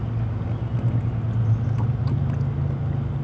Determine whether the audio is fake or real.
real